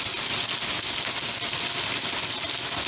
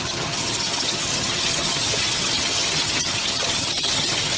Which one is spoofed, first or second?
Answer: second